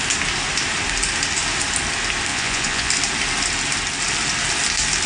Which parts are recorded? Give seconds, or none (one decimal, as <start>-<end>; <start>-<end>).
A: 0.0-2.3; 2.9-5.1